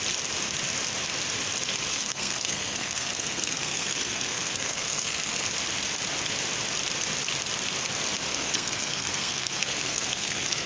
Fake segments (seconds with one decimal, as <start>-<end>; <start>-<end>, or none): 1.9-5.5; 8.3-10.7